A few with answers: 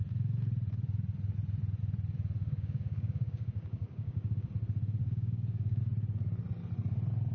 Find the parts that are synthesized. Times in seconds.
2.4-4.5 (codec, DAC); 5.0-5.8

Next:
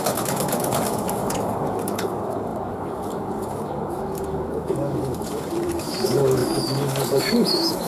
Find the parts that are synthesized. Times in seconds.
0.0-7.9 (codec, DAC)

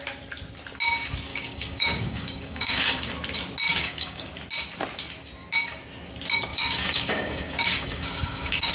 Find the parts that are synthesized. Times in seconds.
1.3-3.1 (codec, DAC); 3.7-4.3; 6.5-8.7